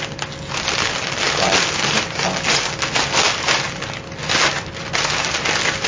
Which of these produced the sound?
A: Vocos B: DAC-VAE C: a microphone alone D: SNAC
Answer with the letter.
C